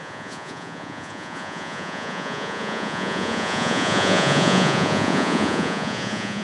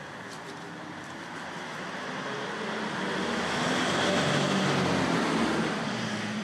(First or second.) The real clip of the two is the second